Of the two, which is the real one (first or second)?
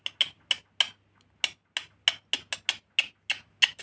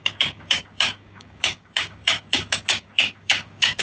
first